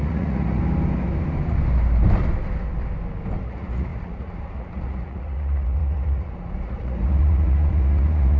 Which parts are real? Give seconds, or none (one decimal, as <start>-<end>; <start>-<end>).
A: 0.6-3.4